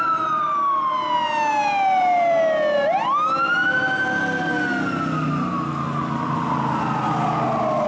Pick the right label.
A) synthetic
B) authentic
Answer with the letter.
B